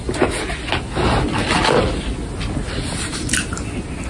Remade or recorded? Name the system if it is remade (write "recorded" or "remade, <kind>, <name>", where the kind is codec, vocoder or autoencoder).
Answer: recorded